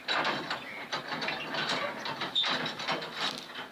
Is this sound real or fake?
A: fake